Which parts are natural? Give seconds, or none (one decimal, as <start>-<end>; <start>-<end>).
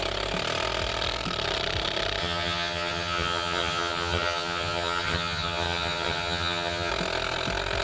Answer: 0.0-2.2; 6.9-7.8